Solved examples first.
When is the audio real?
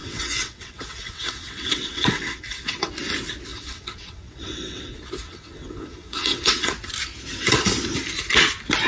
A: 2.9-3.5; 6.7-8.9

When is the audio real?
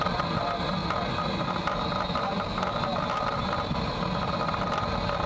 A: 0.0-5.3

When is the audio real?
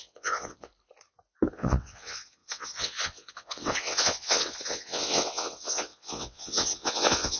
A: 0.7-1.5